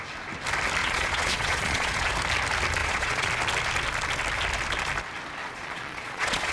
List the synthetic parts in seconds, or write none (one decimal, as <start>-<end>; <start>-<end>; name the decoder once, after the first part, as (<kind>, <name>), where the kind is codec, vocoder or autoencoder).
0.8-2.1 (vocoder, Vocos); 2.8-3.3; 5.4-6.5